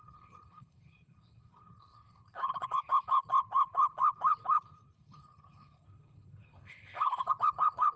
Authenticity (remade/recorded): remade